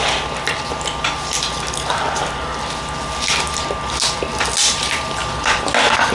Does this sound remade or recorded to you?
recorded